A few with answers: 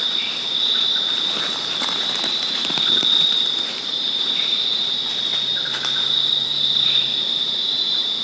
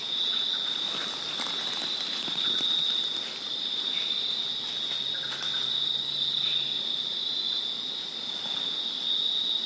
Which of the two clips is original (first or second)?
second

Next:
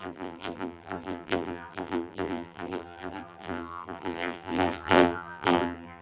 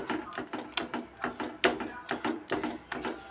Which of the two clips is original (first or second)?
second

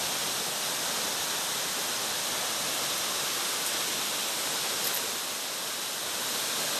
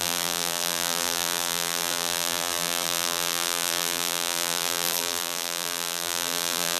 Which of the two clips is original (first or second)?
first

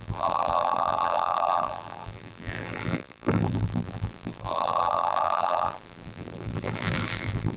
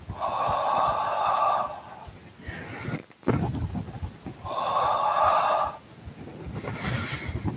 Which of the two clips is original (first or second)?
second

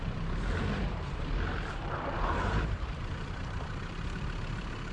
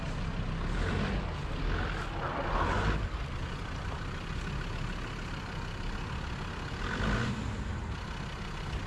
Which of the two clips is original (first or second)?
second